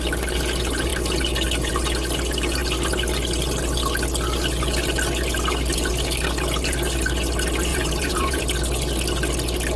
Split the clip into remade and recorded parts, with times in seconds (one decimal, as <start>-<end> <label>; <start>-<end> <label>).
0.0-7.7 recorded; 7.7-8.4 remade; 8.4-9.8 recorded